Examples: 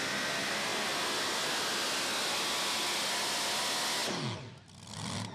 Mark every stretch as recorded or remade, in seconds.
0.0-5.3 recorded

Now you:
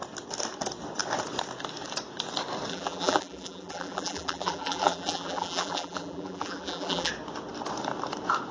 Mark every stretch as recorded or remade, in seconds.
0.0-2.7 recorded; 2.7-7.1 remade; 7.1-8.5 recorded

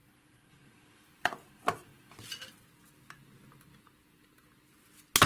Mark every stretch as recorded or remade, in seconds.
0.0-1.3 remade; 1.3-5.3 recorded

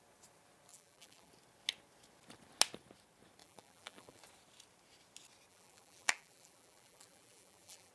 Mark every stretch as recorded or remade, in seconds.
0.0-0.7 recorded; 0.7-1.3 remade; 1.3-3.4 recorded; 3.4-4.2 remade; 4.2-5.5 recorded; 5.5-7.9 remade

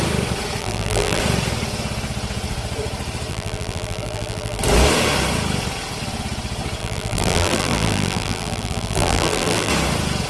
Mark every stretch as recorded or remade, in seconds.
0.0-0.6 recorded; 0.6-1.2 remade; 1.2-3.3 recorded; 3.3-4.6 remade; 4.6-6.8 recorded; 6.8-9.7 remade; 9.7-10.3 recorded

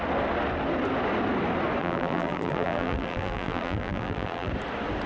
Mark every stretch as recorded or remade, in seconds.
0.0-1.8 recorded; 1.8-4.5 remade; 4.5-5.1 recorded